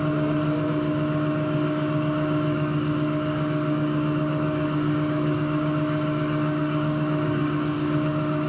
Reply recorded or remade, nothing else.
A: remade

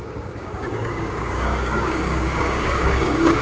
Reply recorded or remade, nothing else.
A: remade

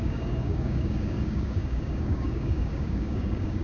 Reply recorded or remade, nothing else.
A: remade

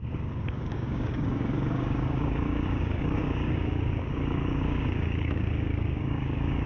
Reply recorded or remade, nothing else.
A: remade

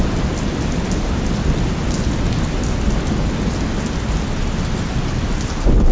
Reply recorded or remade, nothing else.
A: recorded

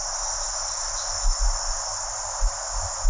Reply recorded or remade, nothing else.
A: recorded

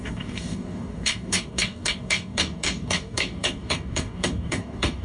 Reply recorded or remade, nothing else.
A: remade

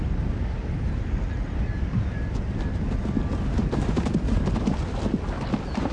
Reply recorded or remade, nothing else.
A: recorded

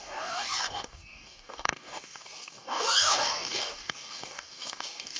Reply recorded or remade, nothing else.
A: remade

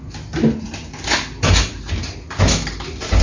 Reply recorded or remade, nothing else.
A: recorded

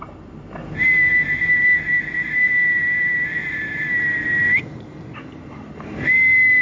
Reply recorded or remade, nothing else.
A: recorded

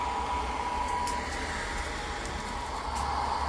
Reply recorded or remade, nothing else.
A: recorded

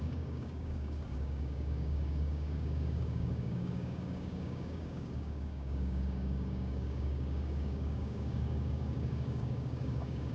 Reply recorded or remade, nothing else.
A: remade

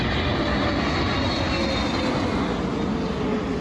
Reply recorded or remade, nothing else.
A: recorded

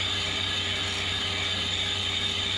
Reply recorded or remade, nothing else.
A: recorded